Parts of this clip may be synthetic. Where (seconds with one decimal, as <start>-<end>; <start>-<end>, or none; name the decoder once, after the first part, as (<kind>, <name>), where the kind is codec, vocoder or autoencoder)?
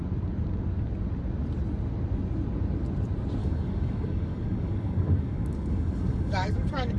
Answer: 3.4-7.0 (codec, DAC)